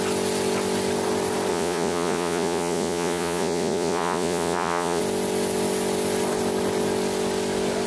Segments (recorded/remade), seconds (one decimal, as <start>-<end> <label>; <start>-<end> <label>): 0.0-1.5 recorded; 1.5-5.0 remade; 5.0-7.9 recorded